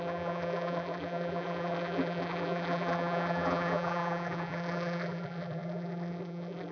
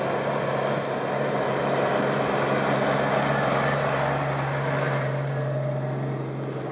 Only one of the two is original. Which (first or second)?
second